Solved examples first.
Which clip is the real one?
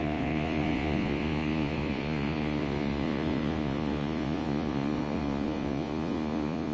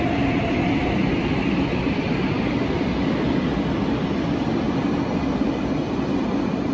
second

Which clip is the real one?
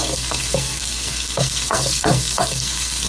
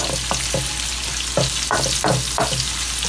second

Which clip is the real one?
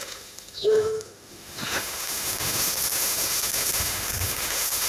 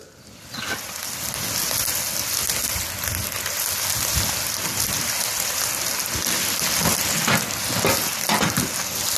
second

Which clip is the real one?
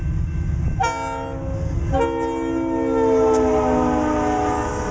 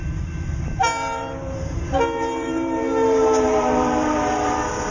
first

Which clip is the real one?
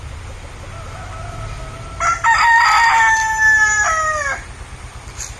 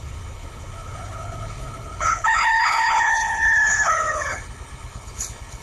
first